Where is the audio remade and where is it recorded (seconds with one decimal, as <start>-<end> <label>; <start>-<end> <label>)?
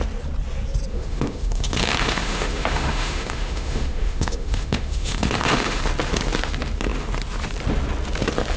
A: 0.0-0.9 recorded; 0.9-5.8 remade; 5.8-8.6 recorded